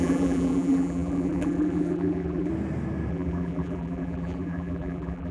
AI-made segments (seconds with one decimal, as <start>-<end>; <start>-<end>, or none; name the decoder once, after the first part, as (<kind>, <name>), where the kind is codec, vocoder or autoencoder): 0.0-2.5 (vocoder, BigVGAN v2); 3.1-5.3